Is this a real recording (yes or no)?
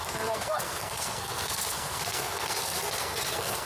no